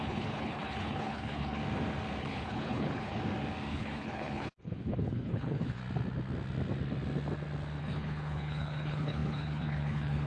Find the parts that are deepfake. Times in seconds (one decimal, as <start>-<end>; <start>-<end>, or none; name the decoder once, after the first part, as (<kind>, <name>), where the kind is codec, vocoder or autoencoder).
0.0-1.6 (codec, HILCodec); 2.2-3.2; 3.7-5.8; 7.8-10.3